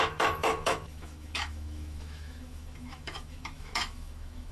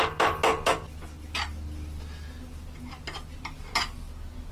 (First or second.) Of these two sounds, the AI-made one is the first